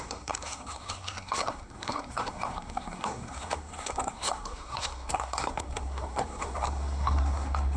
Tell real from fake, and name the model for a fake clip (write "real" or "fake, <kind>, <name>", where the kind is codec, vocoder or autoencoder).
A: fake, codec, SNAC